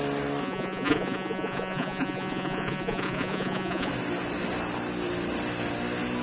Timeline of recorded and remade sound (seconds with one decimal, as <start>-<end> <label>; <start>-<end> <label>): 0.0-0.4 recorded; 0.4-3.9 remade; 3.9-6.2 recorded

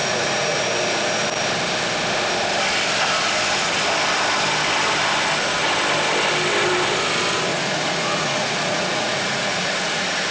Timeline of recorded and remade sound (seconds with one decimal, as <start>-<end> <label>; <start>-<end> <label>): 0.0-0.6 remade; 0.6-7.5 recorded; 7.5-9.7 remade; 9.7-10.3 recorded

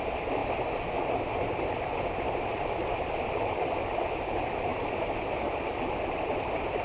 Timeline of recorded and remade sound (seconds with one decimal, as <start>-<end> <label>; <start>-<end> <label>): 0.0-6.8 recorded

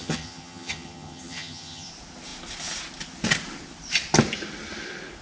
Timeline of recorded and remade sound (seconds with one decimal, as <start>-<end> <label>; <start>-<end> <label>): 0.0-1.9 remade; 1.9-5.2 recorded